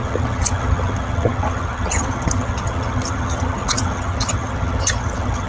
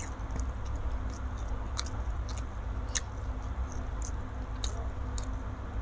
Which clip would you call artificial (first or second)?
first